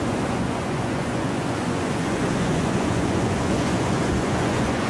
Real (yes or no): no